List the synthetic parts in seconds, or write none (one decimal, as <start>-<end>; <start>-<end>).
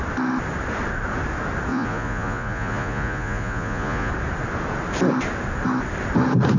1.7-4.1